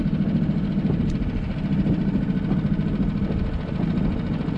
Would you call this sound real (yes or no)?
yes